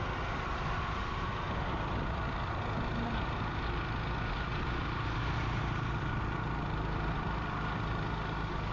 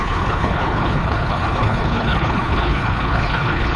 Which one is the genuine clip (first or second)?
first